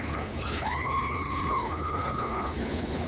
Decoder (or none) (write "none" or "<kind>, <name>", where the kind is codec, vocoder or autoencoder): codec, HILCodec